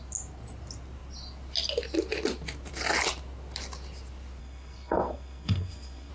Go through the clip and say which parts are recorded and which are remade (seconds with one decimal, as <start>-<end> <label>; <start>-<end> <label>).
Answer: 0.0-4.4 recorded; 4.4-6.1 remade